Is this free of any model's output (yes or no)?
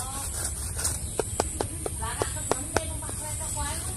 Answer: yes